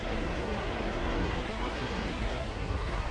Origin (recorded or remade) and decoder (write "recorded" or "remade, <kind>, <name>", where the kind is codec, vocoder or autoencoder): remade, codec, SNAC